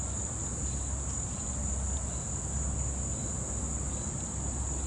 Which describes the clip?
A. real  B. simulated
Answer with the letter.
A